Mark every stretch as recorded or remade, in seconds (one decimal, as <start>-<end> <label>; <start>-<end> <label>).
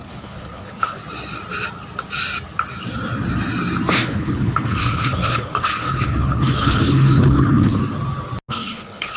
0.0-1.0 remade; 1.0-3.9 recorded; 3.9-7.8 remade; 7.8-8.5 recorded; 8.5-9.2 remade